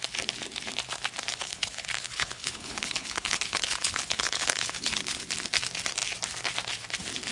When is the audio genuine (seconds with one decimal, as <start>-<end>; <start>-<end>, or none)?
0.0-1.3; 5.2-7.3